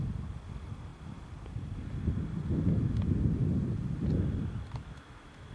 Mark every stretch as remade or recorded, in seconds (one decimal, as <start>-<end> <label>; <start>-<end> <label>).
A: 0.0-4.8 recorded; 4.8-5.5 remade